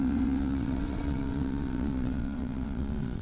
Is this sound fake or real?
fake